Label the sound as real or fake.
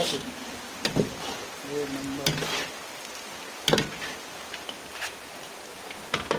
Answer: real